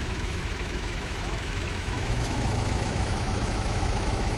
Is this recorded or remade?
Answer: remade